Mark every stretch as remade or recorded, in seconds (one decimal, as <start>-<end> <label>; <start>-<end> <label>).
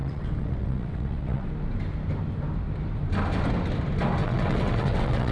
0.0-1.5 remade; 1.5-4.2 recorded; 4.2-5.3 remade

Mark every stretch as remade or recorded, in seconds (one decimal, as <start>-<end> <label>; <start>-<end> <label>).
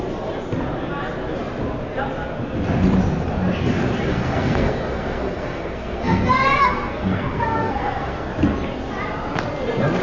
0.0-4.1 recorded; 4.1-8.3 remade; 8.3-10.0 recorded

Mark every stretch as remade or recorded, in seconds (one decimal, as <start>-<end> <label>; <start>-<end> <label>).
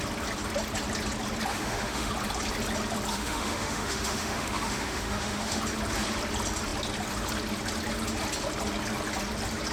0.0-1.5 recorded; 1.5-2.1 remade; 2.1-3.1 recorded; 3.1-5.6 remade; 5.6-9.7 recorded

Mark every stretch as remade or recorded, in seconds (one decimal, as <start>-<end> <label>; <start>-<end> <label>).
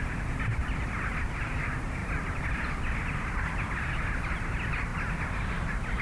0.0-2.0 recorded; 2.0-3.6 remade; 3.6-4.9 recorded; 4.9-6.0 remade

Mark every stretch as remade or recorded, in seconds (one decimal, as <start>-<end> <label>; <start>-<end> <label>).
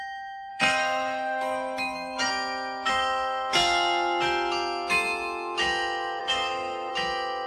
0.0-0.5 recorded; 0.5-2.3 remade; 2.3-6.2 recorded; 6.2-6.9 remade; 6.9-7.5 recorded